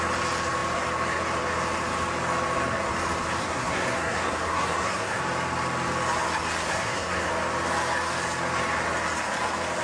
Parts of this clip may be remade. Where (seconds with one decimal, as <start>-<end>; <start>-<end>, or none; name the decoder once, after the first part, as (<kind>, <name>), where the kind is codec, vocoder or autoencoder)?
3.4-5.2 (codec, SNAC); 6.7-7.3